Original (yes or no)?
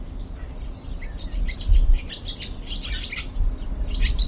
yes